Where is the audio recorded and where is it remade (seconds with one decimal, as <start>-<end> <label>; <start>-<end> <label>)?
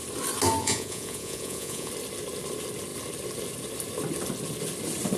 0.0-0.6 recorded; 0.6-1.9 remade; 1.9-5.2 recorded